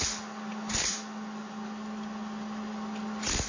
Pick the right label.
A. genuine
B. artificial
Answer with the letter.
A